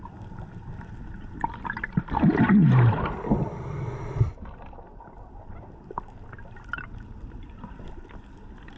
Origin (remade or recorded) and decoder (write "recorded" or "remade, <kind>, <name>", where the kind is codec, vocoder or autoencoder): recorded